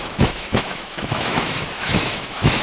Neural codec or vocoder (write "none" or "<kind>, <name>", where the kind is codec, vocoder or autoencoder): autoencoder, DAC-VAE